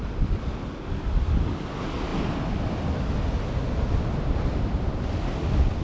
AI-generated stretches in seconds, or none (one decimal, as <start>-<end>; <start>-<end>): none